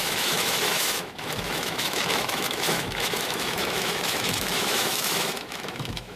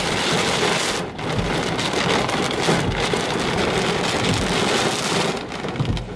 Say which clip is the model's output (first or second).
first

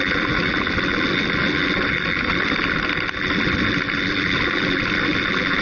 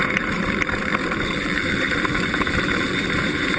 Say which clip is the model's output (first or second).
second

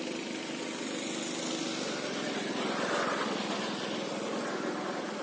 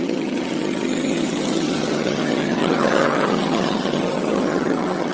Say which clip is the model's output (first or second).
second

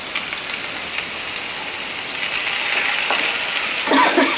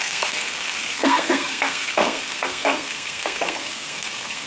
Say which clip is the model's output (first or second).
second